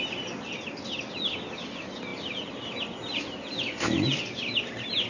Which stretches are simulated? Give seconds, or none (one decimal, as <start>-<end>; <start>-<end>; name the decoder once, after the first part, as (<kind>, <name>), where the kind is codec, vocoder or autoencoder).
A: none